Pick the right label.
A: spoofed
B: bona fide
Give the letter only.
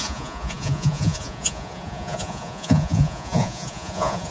A